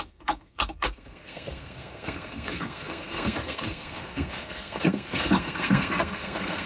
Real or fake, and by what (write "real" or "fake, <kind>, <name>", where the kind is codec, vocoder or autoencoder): fake, codec, SNAC